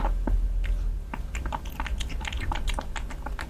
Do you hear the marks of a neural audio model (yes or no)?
no